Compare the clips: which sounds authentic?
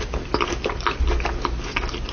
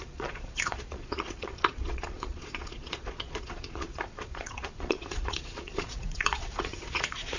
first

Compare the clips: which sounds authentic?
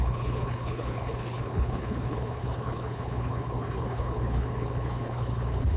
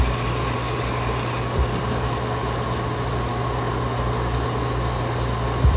second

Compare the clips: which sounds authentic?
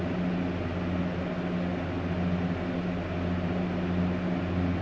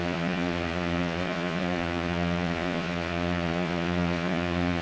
first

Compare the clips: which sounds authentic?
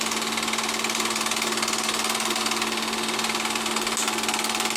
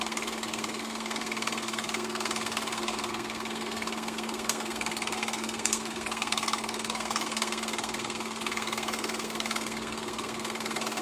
first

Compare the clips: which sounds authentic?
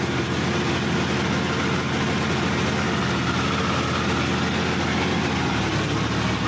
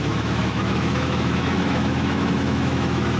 first